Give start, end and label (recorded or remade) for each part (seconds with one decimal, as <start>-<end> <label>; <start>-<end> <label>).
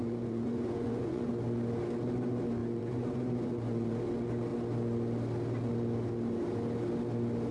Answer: 0.0-1.3 remade; 1.3-2.6 recorded; 2.6-4.0 remade; 4.0-7.5 recorded